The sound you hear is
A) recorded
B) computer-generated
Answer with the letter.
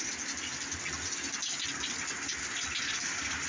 A